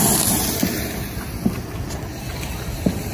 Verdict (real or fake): real